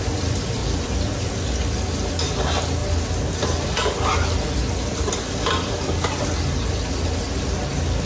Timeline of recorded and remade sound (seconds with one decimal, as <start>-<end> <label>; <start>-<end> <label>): 0.0-8.1 recorded

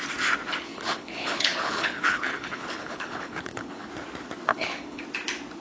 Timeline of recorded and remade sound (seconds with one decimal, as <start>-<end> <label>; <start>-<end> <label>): 0.0-0.7 recorded; 0.7-3.9 remade; 3.9-4.5 recorded; 4.5-5.0 remade; 5.0-5.6 recorded